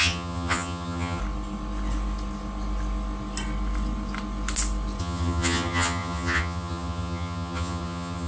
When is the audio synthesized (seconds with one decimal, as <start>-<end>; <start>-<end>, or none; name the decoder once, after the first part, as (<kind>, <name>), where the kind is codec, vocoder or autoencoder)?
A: 0.0-1.2 (vocoder, HiFi-GAN); 5.0-8.3